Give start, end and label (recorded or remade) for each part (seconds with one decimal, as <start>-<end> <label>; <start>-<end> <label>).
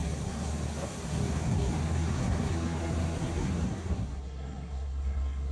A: 0.0-5.5 remade